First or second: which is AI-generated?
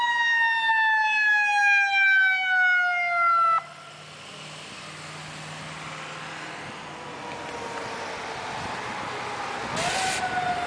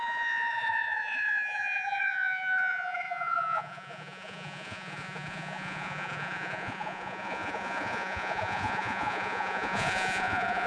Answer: second